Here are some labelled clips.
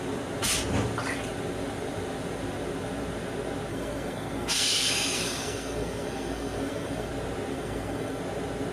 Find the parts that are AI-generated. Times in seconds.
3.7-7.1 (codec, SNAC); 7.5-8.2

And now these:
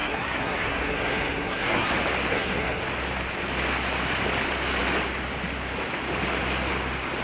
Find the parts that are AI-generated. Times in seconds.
0.0-1.9 (codec, SNAC); 2.3-2.8

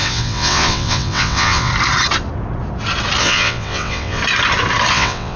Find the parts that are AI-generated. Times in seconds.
0.0-1.7 (vocoder, WaveNeXt); 3.2-4.2; 4.9-5.4

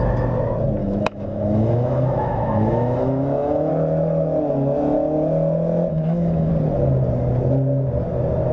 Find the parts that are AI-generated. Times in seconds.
0.8-3.7 (autoencoder, DAC-VAE); 5.9-6.5